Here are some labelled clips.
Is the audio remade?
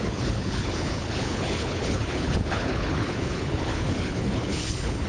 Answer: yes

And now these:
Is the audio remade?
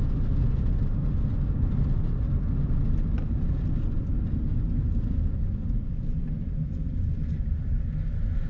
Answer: no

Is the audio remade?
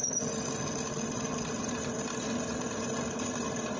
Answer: no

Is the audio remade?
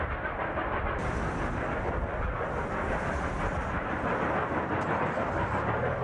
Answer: no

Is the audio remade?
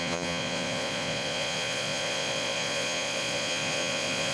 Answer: yes